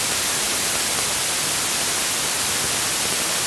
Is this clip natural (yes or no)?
yes